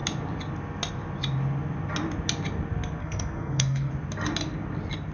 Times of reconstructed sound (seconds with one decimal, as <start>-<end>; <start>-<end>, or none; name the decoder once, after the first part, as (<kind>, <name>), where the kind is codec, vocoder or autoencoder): 3.0-3.9 (codec, SNAC)